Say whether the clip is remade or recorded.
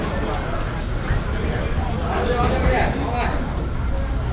recorded